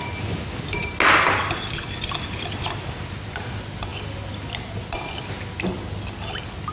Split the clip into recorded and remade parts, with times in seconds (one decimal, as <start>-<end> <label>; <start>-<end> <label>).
0.0-6.7 recorded